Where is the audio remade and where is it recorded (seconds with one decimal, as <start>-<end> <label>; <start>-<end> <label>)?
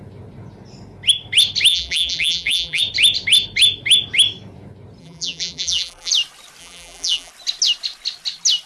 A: 0.0-1.7 recorded; 1.7-2.8 remade; 2.8-5.0 recorded; 5.0-6.1 remade; 6.1-6.6 recorded; 6.6-7.3 remade; 7.3-8.7 recorded